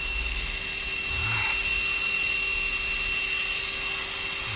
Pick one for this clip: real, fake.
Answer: real